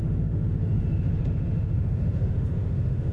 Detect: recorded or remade remade